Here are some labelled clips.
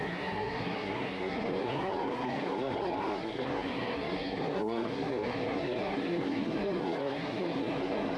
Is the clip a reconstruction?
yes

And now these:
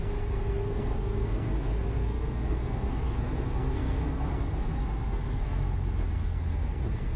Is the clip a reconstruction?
yes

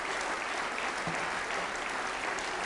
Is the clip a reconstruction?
no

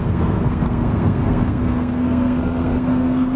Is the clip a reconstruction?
yes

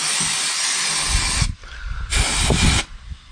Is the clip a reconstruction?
no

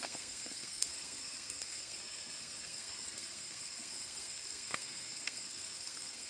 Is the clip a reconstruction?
yes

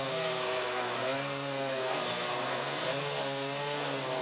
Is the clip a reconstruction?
yes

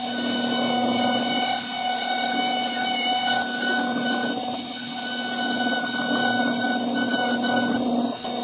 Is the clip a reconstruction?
no